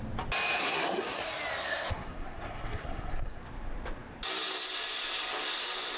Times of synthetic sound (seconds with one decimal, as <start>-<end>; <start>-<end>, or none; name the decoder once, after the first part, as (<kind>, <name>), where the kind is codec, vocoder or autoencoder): 0.6-1.2 (codec, SNAC); 1.6-3.4